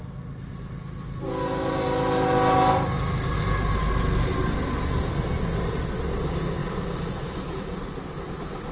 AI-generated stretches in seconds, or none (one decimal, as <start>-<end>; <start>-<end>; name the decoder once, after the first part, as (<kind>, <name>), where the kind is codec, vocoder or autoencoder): none